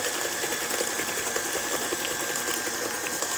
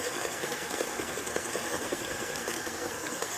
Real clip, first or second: first